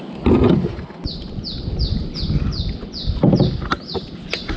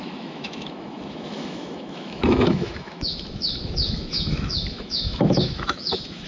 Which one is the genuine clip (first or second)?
first